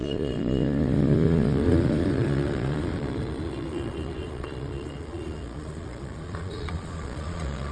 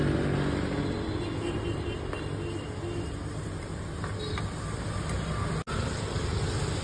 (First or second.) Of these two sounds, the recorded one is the second